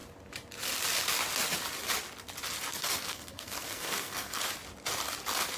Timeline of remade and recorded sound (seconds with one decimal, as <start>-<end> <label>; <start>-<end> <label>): 0.0-2.7 recorded; 2.7-4.4 remade; 4.4-5.6 recorded